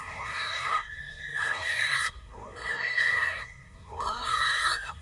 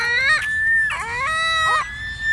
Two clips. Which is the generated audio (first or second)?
first